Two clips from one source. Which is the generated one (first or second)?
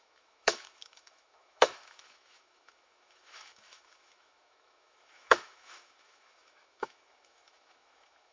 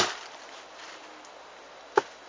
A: first